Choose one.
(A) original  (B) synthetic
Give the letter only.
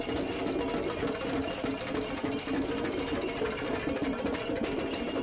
A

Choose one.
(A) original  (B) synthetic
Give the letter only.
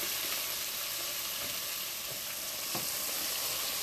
B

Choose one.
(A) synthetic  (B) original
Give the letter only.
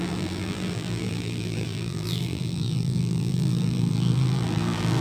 A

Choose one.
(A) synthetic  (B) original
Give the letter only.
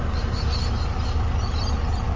A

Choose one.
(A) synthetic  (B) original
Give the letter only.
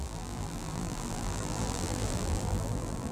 A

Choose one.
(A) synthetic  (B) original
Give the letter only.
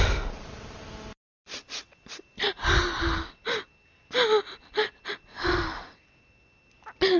B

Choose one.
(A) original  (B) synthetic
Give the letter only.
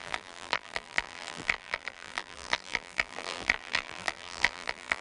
B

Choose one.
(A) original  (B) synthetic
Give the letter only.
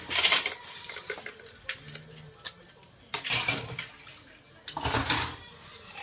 A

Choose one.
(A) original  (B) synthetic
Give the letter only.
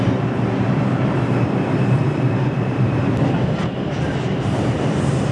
B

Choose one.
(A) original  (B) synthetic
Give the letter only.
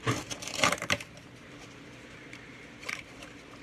B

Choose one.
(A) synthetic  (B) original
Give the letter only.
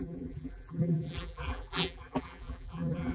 A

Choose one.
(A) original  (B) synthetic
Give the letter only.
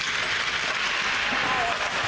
A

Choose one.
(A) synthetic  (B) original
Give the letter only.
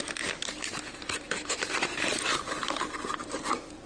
B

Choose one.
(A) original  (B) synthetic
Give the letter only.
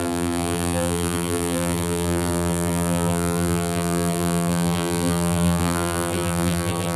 B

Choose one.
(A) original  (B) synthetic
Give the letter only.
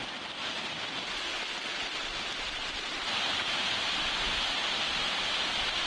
B